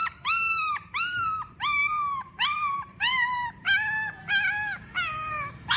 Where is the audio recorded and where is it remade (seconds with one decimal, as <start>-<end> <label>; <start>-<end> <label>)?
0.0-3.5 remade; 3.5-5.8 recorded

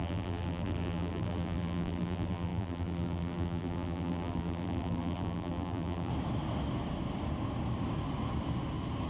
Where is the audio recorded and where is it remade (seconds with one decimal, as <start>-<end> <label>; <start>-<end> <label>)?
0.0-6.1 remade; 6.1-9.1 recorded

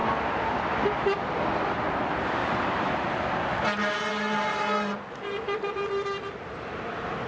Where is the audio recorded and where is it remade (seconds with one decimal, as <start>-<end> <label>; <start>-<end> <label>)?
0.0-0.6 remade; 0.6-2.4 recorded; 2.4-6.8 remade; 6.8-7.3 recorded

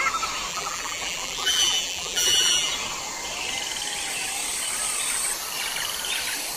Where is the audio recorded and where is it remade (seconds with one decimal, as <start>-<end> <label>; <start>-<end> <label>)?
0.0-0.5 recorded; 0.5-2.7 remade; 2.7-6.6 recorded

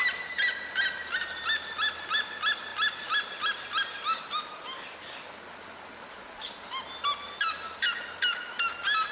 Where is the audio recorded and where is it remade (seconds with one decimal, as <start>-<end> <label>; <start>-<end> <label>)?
0.0-9.1 recorded

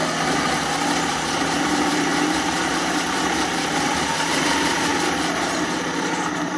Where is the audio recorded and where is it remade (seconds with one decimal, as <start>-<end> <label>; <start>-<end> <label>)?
0.0-1.1 recorded; 1.1-6.6 remade